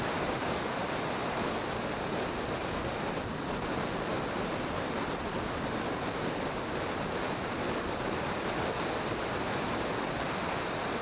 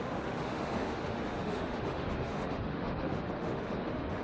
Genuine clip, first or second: first